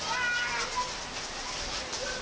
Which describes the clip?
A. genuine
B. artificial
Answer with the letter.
A